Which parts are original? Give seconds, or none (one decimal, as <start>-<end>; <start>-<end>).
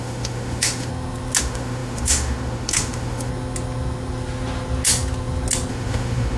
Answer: 0.9-1.4; 3.3-5.7